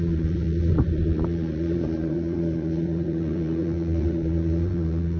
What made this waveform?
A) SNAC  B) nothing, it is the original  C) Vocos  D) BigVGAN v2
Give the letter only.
C